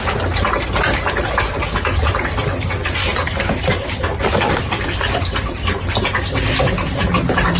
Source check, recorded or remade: recorded